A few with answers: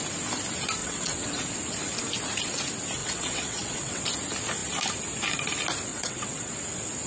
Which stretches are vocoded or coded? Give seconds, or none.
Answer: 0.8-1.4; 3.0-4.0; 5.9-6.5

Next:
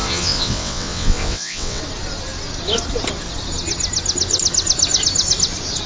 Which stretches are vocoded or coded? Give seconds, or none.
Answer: 0.0-1.8

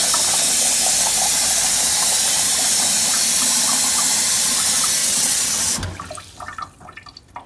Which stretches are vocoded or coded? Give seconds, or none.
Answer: 5.0-5.6

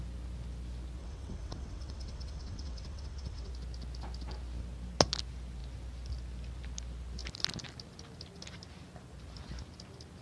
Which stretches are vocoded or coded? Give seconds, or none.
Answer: 1.0-3.5

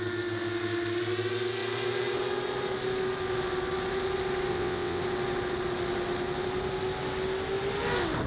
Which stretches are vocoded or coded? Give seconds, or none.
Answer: 4.5-5.0

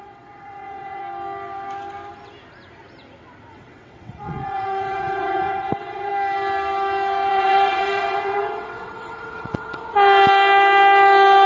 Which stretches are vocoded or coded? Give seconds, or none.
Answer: 0.0-1.0; 3.5-6.1; 7.3-9.8

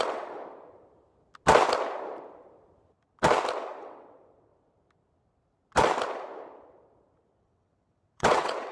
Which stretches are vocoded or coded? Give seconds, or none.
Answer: 0.0-0.4; 3.8-4.5; 7.4-8.7

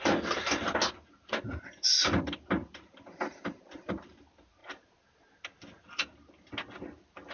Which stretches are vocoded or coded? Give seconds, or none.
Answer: none